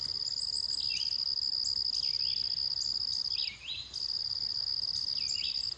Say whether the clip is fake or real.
real